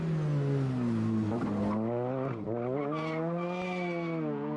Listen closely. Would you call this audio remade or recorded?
recorded